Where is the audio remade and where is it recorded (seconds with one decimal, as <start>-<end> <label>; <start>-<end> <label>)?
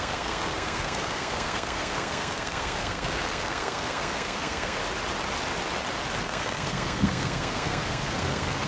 0.0-4.8 remade; 4.8-6.2 recorded; 6.2-8.7 remade